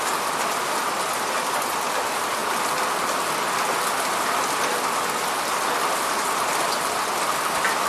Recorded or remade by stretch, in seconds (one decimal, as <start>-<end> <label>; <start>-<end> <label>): 0.0-7.9 recorded